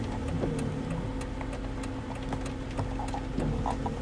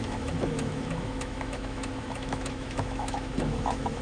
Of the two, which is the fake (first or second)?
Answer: second